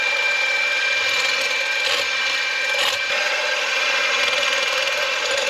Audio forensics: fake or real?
real